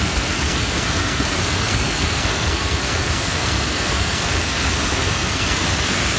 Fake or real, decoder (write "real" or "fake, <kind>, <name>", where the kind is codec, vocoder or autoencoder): fake, codec, SNAC